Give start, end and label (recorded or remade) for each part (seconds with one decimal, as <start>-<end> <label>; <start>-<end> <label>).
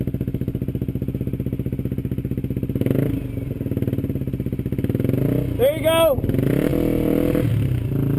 0.0-8.2 recorded